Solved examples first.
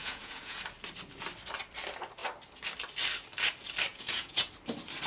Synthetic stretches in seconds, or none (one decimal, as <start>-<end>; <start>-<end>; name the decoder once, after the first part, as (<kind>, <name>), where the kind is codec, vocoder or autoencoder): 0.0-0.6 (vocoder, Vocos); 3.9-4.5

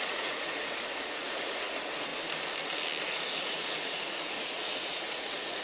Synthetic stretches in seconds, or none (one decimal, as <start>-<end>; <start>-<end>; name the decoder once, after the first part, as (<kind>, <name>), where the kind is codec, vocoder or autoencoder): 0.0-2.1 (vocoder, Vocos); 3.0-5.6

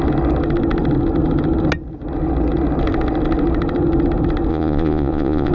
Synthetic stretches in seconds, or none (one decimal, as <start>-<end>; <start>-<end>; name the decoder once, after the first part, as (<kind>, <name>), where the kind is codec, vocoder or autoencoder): 4.5-5.5 (vocoder, Vocos)

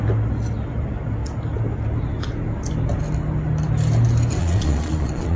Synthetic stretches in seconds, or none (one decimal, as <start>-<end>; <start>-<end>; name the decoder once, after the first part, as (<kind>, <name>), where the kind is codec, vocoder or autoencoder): 4.4-5.4 (vocoder, Vocos)

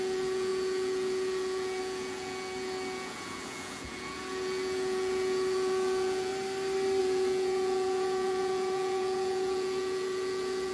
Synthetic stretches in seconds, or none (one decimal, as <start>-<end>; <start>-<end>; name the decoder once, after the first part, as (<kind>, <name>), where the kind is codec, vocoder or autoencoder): 0.0-6.3 (vocoder, Vocos); 7.0-10.7